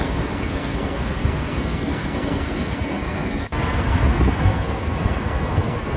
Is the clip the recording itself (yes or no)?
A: no